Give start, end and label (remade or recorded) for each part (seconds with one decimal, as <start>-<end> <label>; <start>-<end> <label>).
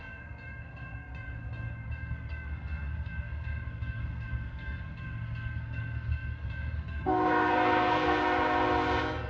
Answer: 0.0-8.2 remade; 8.2-9.3 recorded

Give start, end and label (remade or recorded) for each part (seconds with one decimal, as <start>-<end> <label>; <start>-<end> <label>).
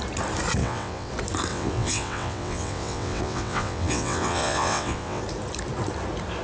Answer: 0.0-0.6 recorded; 0.6-1.1 remade; 1.1-1.5 recorded; 1.5-5.2 remade; 5.2-6.4 recorded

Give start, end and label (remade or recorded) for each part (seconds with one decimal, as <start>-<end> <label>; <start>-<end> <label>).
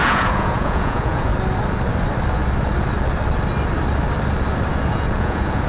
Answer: 0.0-1.3 remade; 1.3-4.7 recorded; 4.7-5.7 remade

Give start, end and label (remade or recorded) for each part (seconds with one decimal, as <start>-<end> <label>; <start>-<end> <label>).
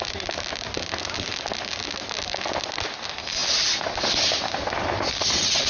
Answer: 0.0-5.7 recorded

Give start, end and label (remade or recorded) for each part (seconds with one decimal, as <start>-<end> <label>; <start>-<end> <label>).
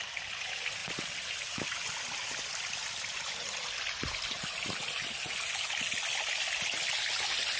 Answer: 0.0-7.6 recorded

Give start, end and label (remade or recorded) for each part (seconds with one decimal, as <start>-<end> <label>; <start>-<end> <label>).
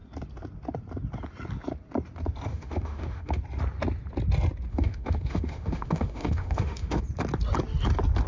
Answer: 0.0-2.5 recorded; 2.5-3.4 remade; 3.4-4.7 recorded; 4.7-7.0 remade; 7.0-8.3 recorded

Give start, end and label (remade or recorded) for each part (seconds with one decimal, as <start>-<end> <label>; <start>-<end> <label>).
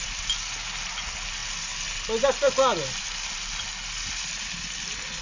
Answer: 0.0-5.2 recorded